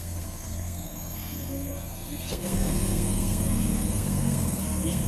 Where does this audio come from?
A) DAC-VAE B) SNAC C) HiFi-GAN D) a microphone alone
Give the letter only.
B